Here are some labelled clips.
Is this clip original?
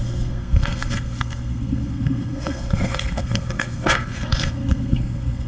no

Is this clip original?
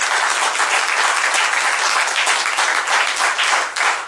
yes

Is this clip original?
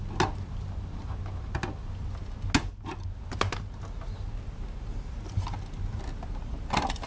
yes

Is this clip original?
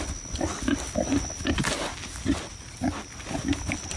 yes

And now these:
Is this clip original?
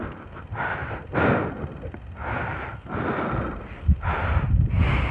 yes